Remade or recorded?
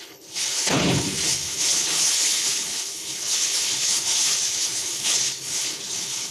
remade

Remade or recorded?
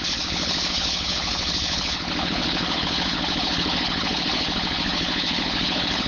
remade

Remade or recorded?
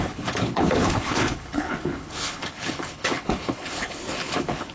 remade